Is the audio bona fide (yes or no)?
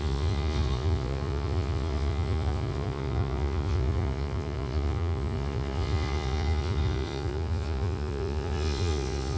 no